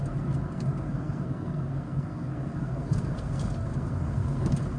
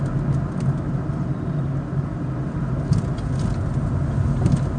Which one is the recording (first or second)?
second